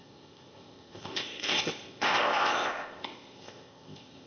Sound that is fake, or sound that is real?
fake